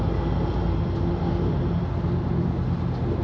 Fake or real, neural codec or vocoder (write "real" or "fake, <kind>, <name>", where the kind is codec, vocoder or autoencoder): real